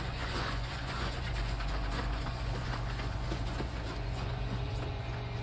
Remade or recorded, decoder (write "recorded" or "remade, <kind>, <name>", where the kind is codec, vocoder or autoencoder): remade, vocoder, Vocos